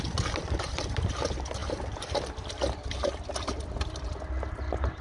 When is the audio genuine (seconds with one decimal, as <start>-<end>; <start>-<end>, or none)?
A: 0.0-5.0